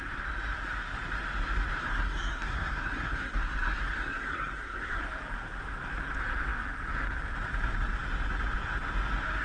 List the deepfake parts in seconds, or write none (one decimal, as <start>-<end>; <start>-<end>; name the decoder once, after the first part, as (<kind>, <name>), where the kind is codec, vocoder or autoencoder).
1.8-5.0 (codec, SNAC)